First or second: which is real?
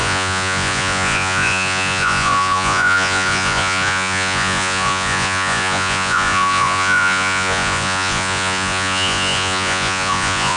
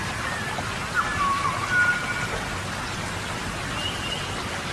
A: second